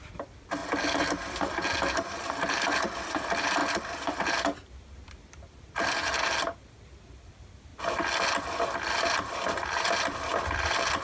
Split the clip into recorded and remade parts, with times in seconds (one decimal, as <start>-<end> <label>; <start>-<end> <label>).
0.0-7.7 remade; 7.7-8.6 recorded; 8.6-11.0 remade